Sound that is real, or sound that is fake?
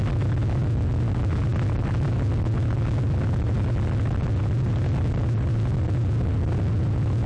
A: real